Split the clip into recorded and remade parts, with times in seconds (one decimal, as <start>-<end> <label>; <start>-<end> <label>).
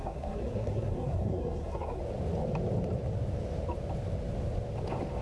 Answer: 0.0-2.0 remade; 2.0-5.2 recorded